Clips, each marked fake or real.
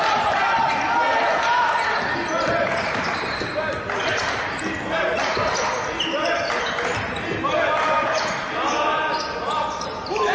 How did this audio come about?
real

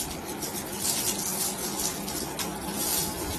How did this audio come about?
real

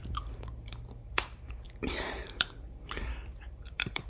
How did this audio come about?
fake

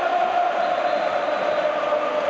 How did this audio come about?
real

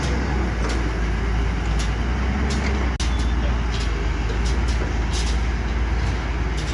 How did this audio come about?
real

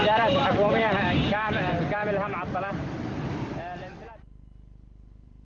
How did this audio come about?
fake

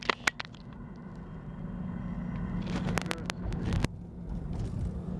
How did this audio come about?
real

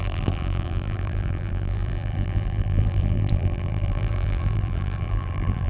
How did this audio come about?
fake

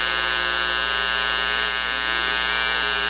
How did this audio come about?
real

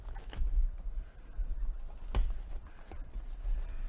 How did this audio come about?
fake